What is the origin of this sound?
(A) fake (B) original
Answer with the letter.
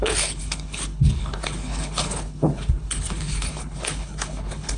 A